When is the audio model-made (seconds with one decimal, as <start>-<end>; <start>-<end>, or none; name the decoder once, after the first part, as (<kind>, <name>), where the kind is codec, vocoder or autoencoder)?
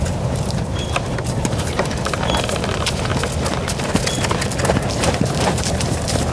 0.0-3.1 (vocoder, BigVGAN v2); 4.9-6.3